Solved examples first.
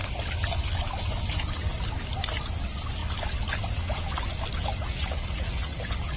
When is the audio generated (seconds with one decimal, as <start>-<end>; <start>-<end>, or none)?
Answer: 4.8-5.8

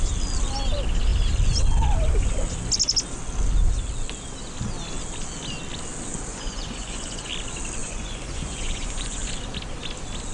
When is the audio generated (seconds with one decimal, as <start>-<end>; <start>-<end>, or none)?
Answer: 6.3-7.3; 7.8-9.3

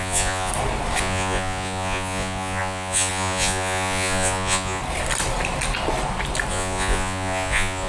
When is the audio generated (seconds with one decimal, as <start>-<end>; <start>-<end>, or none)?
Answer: 0.0-0.5; 1.0-4.8; 6.5-7.9

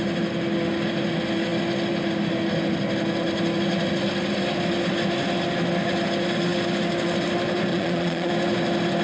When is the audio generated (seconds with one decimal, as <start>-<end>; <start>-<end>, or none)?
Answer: 7.7-8.3

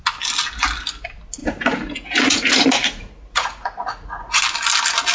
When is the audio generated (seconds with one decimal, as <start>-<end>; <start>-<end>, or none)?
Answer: 1.4-4.4

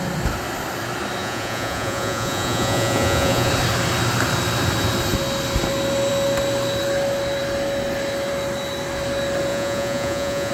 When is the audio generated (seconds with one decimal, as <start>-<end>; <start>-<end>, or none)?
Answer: 1.2-3.5; 9.5-10.5